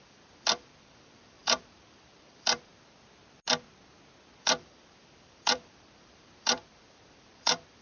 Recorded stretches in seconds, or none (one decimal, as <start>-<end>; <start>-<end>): 2.7-4.4